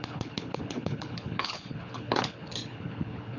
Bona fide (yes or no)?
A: no